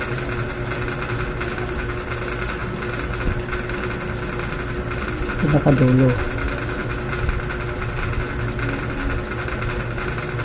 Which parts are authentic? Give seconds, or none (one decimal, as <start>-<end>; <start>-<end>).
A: 0.0-10.4